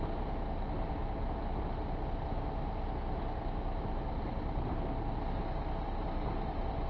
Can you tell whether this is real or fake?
real